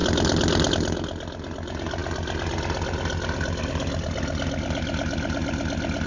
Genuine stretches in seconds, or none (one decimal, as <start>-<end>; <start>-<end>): 0.0-6.1